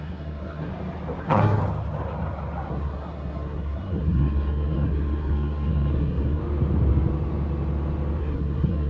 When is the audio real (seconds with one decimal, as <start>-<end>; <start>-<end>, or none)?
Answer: 0.7-1.2; 1.6-2.7; 6.4-8.2

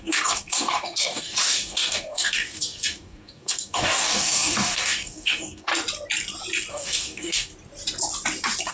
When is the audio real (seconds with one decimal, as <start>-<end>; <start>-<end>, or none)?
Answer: 5.7-6.7; 7.5-8.7